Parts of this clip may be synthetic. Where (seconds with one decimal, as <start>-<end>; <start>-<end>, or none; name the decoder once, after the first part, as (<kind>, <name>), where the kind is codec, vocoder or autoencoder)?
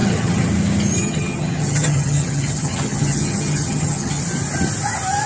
0.0-0.5 (vocoder, HiFi-GAN); 1.0-4.2